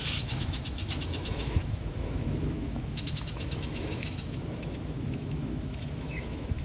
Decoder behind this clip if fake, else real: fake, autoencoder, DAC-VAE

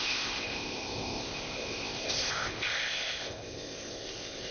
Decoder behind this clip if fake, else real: fake, codec, ZipCodec